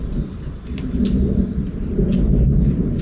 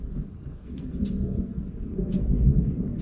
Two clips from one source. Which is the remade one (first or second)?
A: second